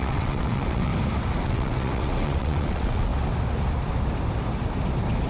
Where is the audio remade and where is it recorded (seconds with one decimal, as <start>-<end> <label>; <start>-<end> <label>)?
0.0-0.9 remade; 0.9-1.4 recorded; 1.4-3.1 remade; 3.1-5.3 recorded